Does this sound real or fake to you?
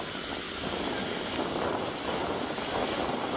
real